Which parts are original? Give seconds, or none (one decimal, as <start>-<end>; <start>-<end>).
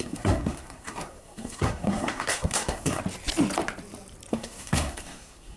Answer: 3.0-4.3